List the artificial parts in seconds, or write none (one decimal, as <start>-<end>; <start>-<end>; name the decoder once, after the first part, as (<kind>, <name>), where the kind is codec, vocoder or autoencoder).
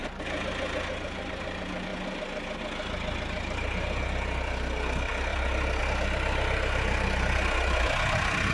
none